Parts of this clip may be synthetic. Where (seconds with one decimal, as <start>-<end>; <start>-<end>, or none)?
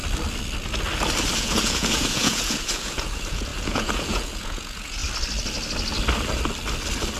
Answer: 1.4-5.0